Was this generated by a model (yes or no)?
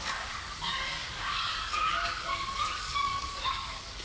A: yes